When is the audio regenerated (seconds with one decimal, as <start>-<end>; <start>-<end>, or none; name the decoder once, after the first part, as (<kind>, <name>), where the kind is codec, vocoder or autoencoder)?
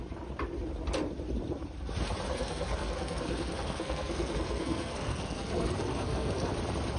2.3-6.5 (codec, SNAC)